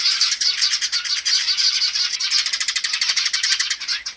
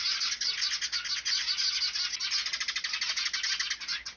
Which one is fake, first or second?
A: first